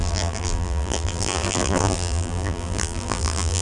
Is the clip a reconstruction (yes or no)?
yes